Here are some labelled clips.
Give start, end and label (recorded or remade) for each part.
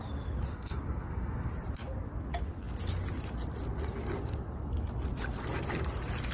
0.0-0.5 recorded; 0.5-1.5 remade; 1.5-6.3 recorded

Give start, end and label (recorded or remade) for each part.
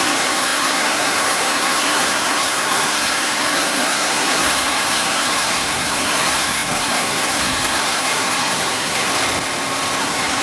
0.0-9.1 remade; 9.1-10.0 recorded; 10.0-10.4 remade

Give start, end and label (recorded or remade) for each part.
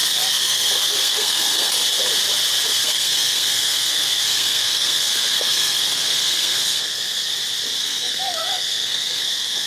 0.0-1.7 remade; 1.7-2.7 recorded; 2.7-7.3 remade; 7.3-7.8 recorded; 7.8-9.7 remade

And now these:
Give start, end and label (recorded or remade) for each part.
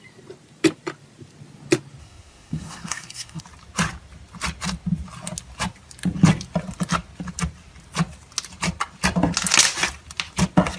0.0-2.0 recorded; 2.0-3.4 remade; 3.4-10.8 recorded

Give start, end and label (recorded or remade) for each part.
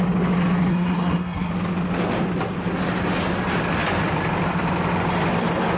0.0-0.7 recorded; 0.7-1.5 remade; 1.5-5.8 recorded